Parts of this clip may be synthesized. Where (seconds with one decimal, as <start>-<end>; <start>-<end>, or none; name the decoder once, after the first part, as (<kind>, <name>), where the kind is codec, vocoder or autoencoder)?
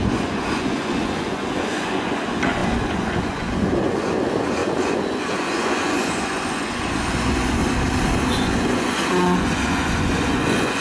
0.0-7.6 (vocoder, Vocos); 8.3-10.8